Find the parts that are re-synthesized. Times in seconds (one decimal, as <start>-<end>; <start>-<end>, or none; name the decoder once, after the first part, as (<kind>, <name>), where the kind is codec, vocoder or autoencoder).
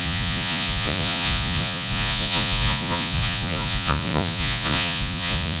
0.0-5.6 (vocoder, Vocos)